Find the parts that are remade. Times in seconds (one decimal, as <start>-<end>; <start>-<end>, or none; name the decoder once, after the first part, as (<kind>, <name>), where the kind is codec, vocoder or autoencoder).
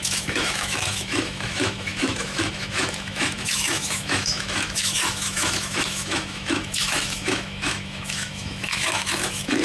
0.0-9.6 (autoencoder, DAC-VAE)